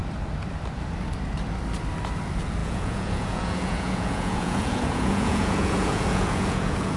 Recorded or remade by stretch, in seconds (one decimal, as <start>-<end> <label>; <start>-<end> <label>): 0.0-2.6 recorded; 2.6-7.0 remade